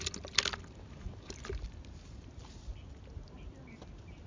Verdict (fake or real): real